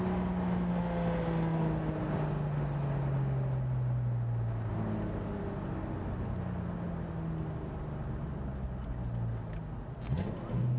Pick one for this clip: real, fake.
real